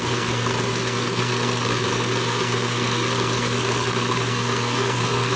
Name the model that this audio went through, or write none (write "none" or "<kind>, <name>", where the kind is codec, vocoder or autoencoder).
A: codec, SNAC